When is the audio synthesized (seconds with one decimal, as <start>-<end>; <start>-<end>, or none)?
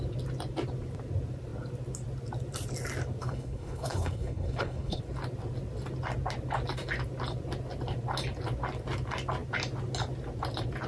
3.2-5.0